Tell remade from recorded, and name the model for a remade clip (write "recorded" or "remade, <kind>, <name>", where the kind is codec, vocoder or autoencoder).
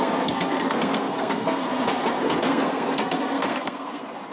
remade, codec, SNAC